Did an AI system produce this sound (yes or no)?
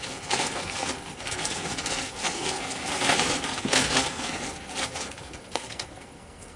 yes